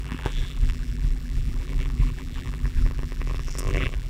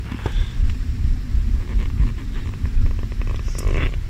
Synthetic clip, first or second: first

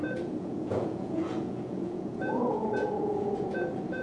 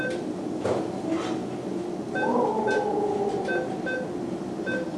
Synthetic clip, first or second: first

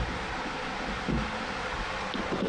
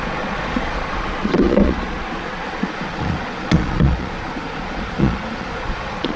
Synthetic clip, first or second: second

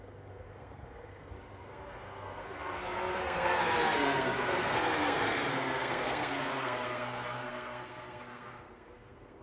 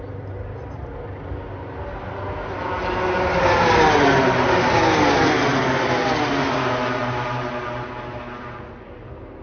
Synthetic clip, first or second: first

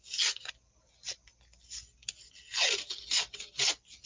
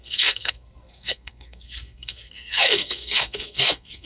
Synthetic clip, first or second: second